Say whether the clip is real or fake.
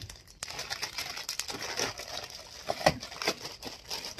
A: real